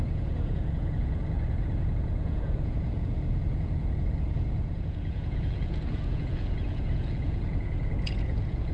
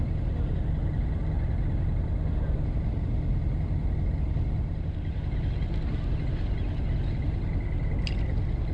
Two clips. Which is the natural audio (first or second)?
second